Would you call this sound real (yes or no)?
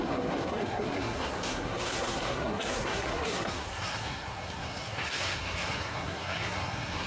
no